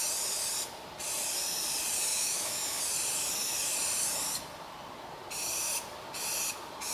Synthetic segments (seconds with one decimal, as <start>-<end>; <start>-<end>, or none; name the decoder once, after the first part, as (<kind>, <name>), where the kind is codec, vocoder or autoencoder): 2.1-2.8 (autoencoder, DAC-VAE)